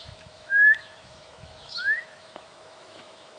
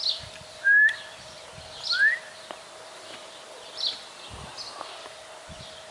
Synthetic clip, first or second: first